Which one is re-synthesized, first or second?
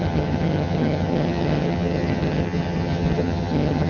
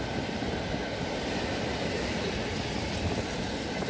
first